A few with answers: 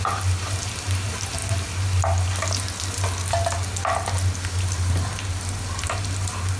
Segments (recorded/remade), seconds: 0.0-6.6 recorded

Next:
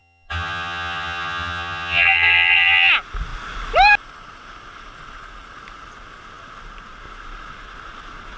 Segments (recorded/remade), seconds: 0.0-2.9 remade; 2.9-8.4 recorded